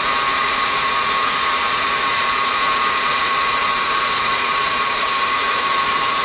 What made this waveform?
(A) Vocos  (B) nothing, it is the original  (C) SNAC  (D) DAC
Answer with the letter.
A